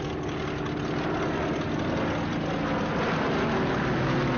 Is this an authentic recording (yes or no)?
yes